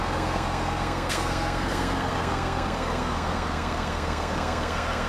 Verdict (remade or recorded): remade